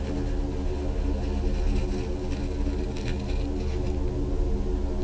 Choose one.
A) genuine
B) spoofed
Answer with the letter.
A